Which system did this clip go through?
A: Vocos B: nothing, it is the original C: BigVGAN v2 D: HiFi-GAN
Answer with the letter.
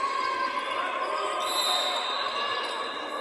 B